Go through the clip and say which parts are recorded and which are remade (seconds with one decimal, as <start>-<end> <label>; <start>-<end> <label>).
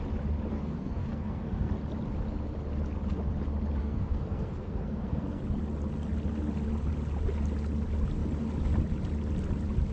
0.0-0.5 recorded; 0.5-1.7 remade; 1.7-3.8 recorded; 3.8-5.4 remade; 5.4-9.9 recorded